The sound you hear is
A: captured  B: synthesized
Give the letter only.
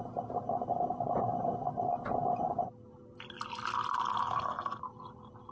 A